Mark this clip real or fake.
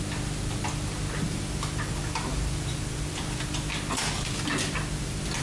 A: real